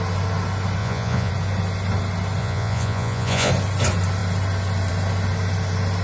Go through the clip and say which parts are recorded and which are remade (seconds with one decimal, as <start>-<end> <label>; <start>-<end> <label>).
0.0-0.8 recorded; 0.8-1.3 remade; 1.3-2.4 recorded; 2.4-3.5 remade; 3.5-6.0 recorded